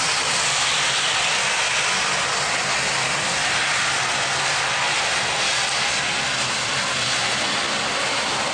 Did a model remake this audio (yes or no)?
yes